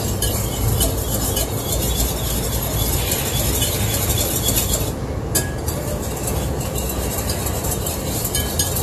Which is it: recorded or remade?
recorded